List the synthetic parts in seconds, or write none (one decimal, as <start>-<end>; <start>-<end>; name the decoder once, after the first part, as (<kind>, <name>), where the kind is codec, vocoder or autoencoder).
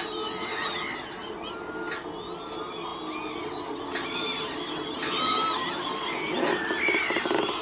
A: none